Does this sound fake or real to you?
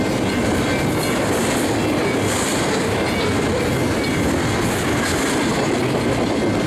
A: real